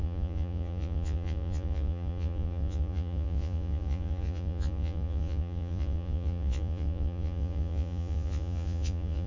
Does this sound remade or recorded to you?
remade